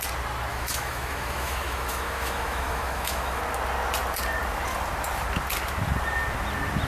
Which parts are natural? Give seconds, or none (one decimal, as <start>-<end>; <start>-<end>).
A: 0.0-0.5; 3.4-6.9